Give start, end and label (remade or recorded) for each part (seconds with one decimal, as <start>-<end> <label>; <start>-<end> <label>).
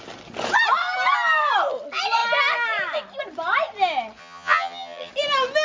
0.0-4.2 recorded; 4.2-5.1 remade; 5.1-5.6 recorded